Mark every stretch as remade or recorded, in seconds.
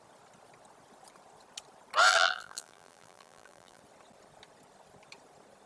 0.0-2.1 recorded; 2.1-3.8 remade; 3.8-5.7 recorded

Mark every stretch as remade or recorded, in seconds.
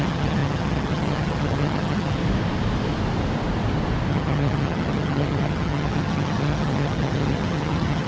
0.0-2.2 remade; 2.2-4.1 recorded; 4.1-8.1 remade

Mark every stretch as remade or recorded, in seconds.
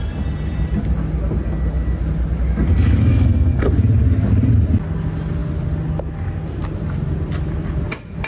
0.0-3.0 recorded; 3.0-3.7 remade; 3.7-8.3 recorded